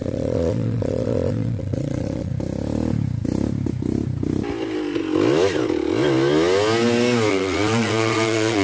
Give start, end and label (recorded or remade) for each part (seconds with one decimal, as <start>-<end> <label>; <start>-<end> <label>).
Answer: 0.0-2.3 remade; 2.3-7.3 recorded; 7.3-8.6 remade